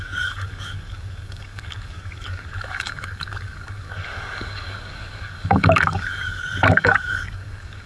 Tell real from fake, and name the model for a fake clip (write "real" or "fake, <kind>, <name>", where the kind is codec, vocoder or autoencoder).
fake, codec, DAC